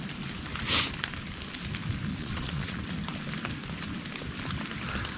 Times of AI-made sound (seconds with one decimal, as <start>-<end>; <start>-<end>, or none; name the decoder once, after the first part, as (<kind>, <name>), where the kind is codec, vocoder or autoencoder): 2.1-2.8 (vocoder, Vocos)